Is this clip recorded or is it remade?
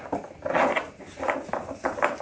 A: recorded